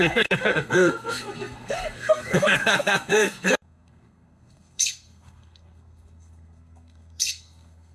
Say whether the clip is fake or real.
fake